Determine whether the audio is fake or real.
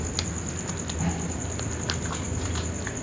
fake